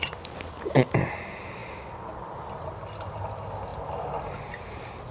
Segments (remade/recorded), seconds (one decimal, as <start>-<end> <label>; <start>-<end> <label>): 0.0-5.1 recorded